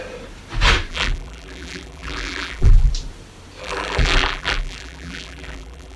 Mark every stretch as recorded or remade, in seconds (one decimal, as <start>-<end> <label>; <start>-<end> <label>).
0.0-0.9 recorded; 0.9-2.9 remade; 2.9-3.6 recorded; 3.6-6.0 remade